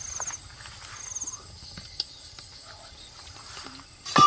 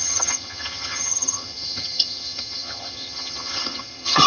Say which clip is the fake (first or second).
second